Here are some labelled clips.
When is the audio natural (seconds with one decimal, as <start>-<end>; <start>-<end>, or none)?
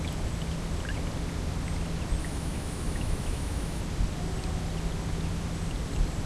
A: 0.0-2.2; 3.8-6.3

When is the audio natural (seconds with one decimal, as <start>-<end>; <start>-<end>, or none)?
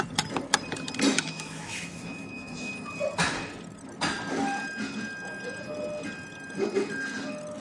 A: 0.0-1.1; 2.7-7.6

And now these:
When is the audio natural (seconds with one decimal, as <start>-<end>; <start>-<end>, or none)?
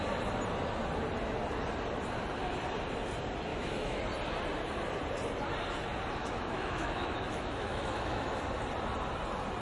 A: 0.0-3.5; 4.0-6.2; 8.4-9.6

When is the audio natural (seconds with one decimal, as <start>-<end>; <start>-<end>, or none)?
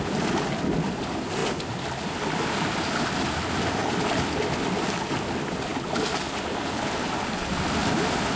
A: 0.0-8.4